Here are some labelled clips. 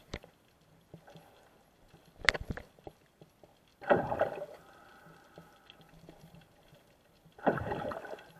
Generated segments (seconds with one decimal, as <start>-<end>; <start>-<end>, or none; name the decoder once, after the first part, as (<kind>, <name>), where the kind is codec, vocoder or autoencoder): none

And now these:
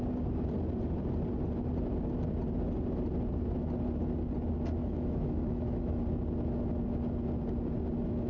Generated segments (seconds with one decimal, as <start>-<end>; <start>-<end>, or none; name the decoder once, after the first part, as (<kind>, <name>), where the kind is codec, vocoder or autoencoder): 4.8-6.0 (autoencoder, DAC-VAE)

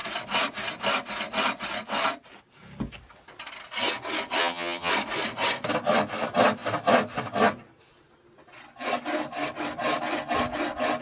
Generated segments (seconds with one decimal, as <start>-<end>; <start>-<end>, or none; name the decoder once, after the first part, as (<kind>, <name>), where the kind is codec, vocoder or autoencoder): 4.4-4.9 (vocoder, HiFi-GAN)